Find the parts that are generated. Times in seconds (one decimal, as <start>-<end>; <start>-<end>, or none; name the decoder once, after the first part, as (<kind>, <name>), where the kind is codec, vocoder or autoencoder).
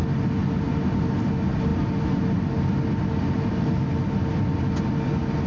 none